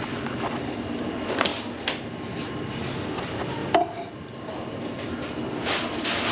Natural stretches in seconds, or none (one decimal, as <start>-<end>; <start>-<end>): 0.0-3.6; 4.8-6.3